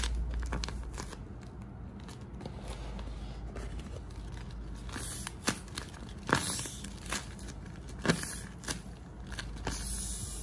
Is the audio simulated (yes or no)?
no